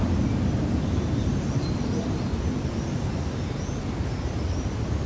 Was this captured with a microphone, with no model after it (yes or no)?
yes